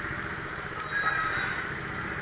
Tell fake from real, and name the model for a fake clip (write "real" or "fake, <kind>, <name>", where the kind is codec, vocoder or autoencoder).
real